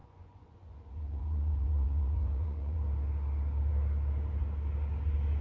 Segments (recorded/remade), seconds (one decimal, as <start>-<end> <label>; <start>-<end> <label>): 0.0-2.8 remade; 2.8-5.4 recorded